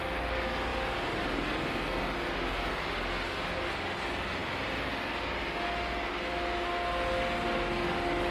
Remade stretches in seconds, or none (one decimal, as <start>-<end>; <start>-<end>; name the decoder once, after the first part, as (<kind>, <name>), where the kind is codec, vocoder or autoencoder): none